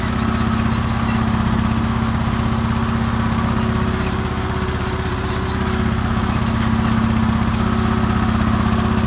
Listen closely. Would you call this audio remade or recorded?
recorded